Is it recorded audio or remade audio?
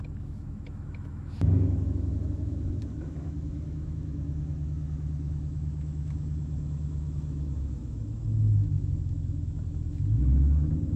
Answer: remade